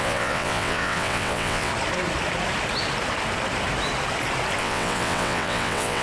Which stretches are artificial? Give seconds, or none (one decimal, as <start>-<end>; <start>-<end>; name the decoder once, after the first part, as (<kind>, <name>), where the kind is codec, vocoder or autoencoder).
0.0-1.7 (vocoder, WaveNeXt); 4.6-6.0